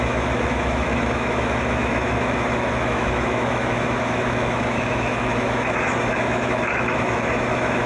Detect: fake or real fake